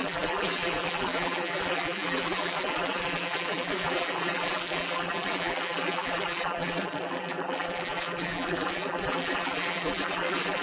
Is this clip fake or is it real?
fake